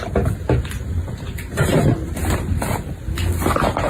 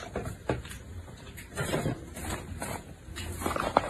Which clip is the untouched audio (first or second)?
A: first